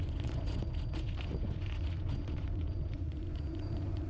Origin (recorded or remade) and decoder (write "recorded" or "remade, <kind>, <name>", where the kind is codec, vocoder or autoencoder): remade, vocoder, Vocos